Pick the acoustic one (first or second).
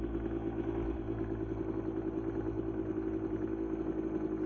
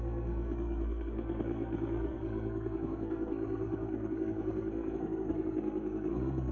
first